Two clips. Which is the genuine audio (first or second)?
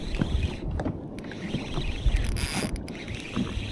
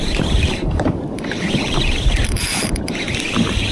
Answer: first